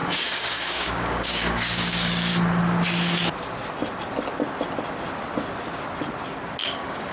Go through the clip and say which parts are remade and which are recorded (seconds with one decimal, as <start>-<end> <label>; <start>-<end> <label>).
0.0-2.3 remade; 2.3-6.6 recorded; 6.6-7.1 remade